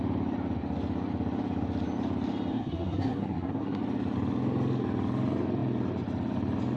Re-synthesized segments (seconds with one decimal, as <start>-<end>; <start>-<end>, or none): 2.5-3.8